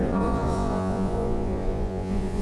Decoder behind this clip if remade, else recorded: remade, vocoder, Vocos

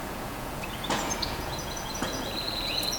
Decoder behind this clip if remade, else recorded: remade, vocoder, Vocos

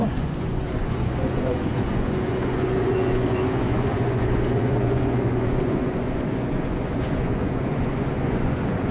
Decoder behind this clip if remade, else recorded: remade, vocoder, Vocos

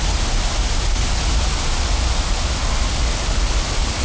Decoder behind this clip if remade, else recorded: recorded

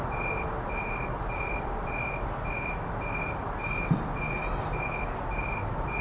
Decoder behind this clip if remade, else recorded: recorded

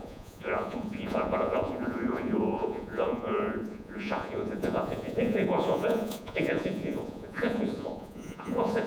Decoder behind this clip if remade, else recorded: remade, vocoder, Vocos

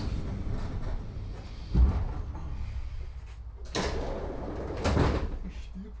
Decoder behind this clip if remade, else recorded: recorded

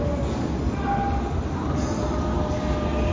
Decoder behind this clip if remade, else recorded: recorded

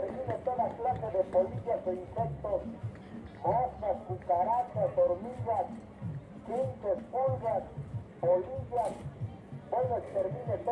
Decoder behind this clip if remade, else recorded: recorded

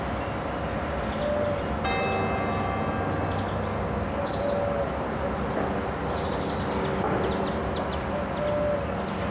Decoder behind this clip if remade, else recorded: recorded